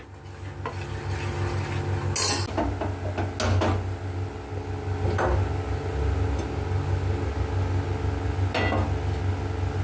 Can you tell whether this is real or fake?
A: real